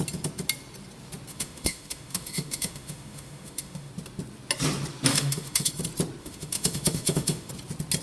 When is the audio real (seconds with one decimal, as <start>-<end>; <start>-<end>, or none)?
0.0-1.3; 3.9-5.1; 5.7-6.2; 7.5-8.0

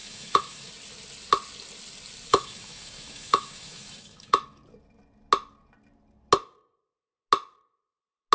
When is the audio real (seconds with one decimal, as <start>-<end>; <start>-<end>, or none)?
0.7-2.3; 4.6-8.3

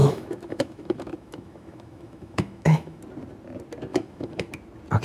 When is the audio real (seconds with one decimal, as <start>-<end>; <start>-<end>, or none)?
3.0-3.9; 4.5-5.0

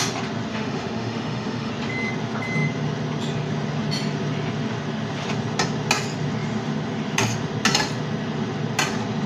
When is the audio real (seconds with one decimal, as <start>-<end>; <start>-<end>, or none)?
0.0-0.5; 1.7-9.3

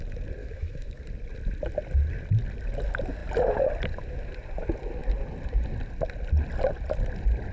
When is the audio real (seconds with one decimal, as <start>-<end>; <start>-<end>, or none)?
0.0-0.4; 1.0-7.5